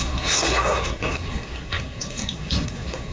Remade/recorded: remade